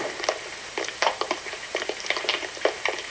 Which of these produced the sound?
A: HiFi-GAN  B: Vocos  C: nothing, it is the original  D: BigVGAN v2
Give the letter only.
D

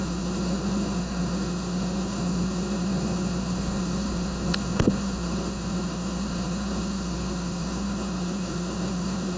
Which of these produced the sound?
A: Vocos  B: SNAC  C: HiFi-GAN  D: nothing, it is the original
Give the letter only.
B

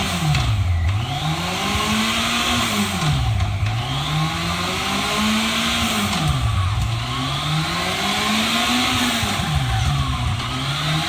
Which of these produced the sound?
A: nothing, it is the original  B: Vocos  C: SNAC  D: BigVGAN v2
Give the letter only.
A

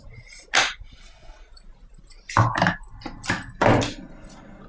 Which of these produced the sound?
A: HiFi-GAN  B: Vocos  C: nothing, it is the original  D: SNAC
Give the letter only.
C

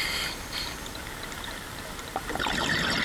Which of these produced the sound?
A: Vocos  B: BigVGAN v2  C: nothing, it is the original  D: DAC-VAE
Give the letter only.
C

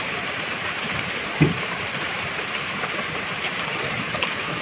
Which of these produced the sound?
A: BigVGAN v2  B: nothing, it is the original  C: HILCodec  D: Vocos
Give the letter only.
A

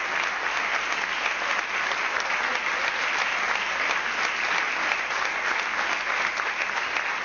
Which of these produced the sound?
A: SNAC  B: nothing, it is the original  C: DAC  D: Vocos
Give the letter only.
B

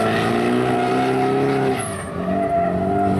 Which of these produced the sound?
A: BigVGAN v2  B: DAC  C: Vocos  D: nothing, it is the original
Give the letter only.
D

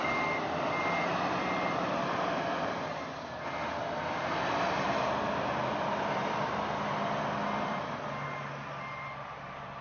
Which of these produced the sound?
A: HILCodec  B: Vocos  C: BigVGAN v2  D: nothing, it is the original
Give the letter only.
D